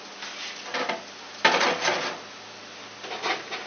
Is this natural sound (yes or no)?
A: yes